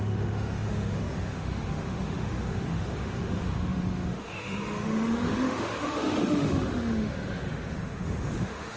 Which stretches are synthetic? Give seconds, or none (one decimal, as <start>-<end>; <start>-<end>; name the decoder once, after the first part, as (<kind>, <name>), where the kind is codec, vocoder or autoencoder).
0.0-8.8 (autoencoder, DAC-VAE)